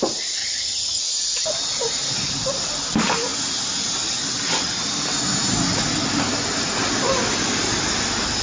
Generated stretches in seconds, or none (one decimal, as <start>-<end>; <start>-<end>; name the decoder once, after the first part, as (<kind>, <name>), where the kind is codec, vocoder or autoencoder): 0.4-1.0 (vocoder, HiFi-GAN)